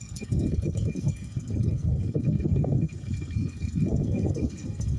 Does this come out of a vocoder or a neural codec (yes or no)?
yes